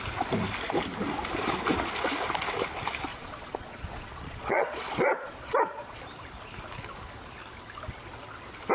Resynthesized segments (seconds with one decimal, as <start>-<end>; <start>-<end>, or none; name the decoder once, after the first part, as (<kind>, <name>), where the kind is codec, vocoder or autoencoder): 3.1-6.0 (vocoder, Vocos)